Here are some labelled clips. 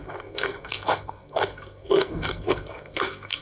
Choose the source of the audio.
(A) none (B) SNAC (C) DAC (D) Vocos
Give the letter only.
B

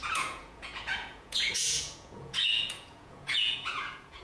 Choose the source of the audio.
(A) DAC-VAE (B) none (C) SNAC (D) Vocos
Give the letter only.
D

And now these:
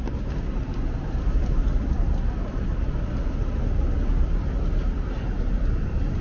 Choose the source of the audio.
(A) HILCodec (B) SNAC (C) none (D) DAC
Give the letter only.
C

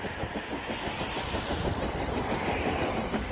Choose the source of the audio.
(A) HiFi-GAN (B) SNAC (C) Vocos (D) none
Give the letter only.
D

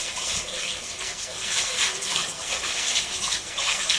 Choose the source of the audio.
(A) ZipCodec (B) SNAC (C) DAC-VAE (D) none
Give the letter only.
B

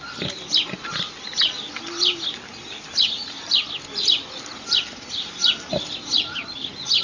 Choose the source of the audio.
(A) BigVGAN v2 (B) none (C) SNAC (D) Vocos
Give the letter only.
B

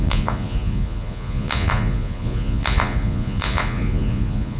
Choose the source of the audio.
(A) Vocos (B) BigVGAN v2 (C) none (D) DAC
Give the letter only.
A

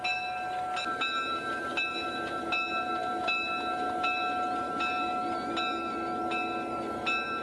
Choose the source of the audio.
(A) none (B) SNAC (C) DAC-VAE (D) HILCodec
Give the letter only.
A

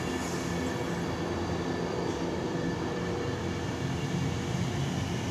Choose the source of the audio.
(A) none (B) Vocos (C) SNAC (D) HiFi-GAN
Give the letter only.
A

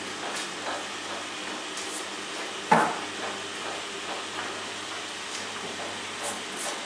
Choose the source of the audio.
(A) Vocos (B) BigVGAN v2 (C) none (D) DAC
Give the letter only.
C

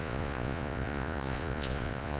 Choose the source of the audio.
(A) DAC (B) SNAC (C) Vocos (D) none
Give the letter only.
C